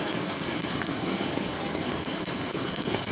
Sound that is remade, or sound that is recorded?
remade